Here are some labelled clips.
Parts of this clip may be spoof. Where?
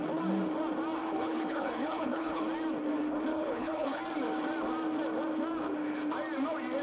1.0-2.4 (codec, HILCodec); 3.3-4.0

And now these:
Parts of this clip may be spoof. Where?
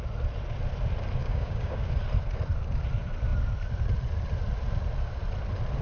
1.2-1.9 (codec, DAC)